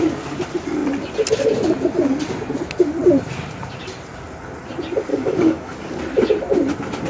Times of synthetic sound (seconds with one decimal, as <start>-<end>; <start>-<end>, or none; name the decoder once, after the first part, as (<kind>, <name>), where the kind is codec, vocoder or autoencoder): 5.1-6.0 (codec, DAC)